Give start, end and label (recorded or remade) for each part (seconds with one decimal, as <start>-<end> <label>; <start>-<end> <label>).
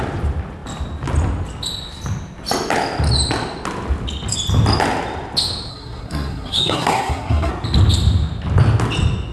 0.0-5.7 recorded; 5.7-7.5 remade; 7.5-9.3 recorded